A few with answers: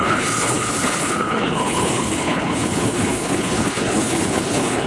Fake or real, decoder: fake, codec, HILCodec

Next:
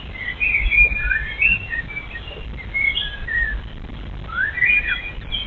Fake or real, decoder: real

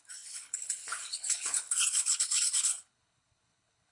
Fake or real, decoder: fake, codec, HILCodec